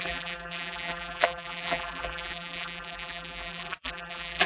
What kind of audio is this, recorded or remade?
remade